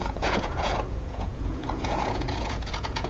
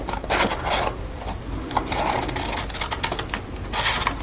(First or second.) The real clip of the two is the second